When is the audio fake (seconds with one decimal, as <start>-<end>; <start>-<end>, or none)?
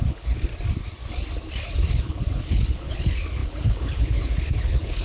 0.0-0.5; 1.9-5.0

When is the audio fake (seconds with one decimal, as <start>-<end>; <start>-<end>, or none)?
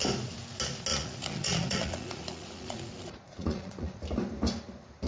0.9-4.0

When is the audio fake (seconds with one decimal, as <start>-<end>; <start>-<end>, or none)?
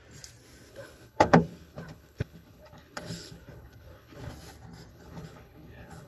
0.7-4.3; 4.9-6.1